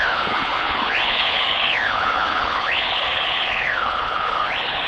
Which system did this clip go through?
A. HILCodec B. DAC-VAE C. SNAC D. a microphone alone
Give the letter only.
A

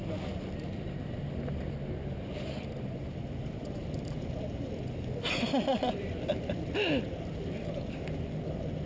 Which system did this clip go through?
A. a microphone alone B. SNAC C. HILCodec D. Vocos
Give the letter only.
A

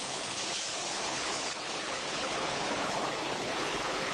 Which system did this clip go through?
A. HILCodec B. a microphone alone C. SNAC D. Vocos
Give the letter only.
A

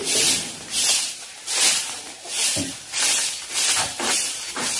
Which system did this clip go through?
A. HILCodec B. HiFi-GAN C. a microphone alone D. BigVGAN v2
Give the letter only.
C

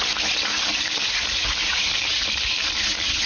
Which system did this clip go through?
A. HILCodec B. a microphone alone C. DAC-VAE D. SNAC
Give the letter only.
B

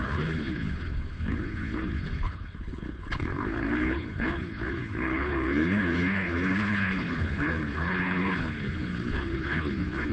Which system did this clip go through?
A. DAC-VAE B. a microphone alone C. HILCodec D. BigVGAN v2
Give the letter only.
C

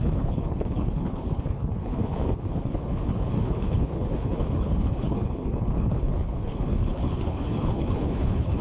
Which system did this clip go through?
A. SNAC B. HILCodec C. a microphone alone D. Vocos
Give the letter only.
B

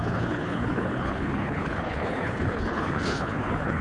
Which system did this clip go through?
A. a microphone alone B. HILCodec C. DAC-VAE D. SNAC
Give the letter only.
B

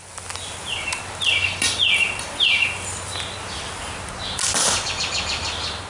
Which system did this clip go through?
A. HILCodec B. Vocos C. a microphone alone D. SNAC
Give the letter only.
C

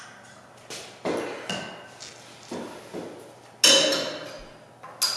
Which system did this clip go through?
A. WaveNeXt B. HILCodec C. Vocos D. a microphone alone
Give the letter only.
D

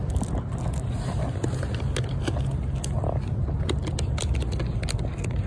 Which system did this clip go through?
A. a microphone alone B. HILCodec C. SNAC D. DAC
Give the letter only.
A